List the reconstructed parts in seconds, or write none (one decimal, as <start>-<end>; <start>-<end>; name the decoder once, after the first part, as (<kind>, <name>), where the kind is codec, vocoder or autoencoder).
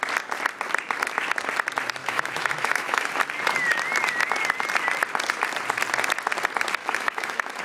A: 2.0-3.1 (autoencoder, DAC-VAE); 6.8-7.6